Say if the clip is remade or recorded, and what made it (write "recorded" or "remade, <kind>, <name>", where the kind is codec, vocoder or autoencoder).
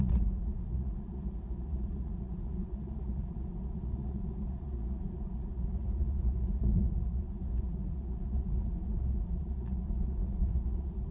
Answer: remade, vocoder, Vocos